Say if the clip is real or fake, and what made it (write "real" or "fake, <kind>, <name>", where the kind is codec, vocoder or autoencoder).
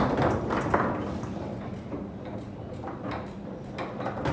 real